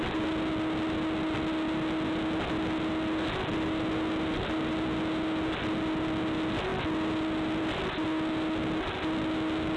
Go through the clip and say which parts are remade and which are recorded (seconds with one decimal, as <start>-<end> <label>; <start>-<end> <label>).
0.0-9.8 recorded